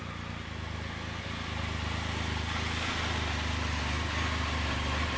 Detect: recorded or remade recorded